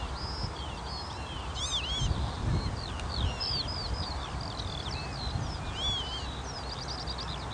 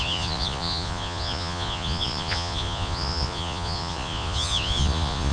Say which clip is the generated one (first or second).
second